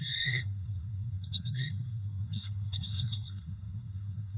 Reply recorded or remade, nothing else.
remade